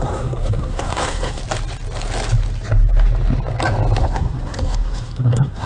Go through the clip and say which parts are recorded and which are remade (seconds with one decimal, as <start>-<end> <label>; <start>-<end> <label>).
0.0-1.4 remade; 1.4-4.0 recorded; 4.0-5.7 remade